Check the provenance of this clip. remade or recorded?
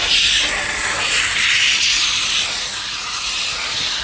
remade